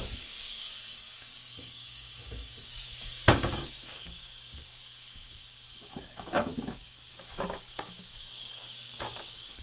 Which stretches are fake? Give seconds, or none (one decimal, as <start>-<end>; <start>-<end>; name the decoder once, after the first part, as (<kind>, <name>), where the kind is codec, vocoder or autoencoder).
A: 0.0-9.6 (codec, DAC)